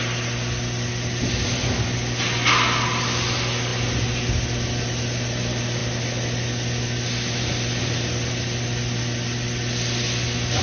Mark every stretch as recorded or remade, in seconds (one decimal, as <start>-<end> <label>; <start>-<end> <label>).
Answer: 0.0-10.6 recorded